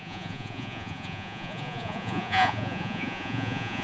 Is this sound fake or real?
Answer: fake